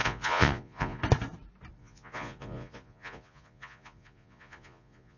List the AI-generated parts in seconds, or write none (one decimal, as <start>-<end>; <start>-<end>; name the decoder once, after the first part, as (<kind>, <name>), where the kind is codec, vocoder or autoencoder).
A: 0.0-1.0 (vocoder, Vocos); 1.8-5.2